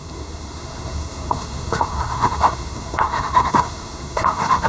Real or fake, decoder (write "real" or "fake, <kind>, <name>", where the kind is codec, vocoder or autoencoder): fake, codec, SNAC